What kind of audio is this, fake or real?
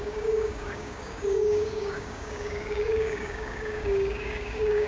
fake